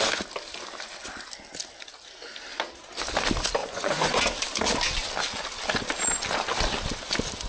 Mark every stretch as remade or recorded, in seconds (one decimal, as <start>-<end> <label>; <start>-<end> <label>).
0.0-3.6 recorded; 3.6-4.2 remade; 4.2-7.5 recorded